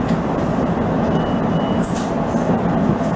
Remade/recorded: recorded